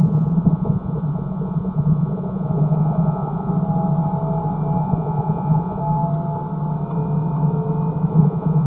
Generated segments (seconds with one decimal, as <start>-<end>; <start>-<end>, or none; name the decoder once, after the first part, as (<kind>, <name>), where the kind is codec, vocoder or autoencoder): 0.0-3.5 (vocoder, Vocos); 4.8-5.8; 8.1-8.7